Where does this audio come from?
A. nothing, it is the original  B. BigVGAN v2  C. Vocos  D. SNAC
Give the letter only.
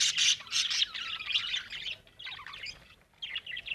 A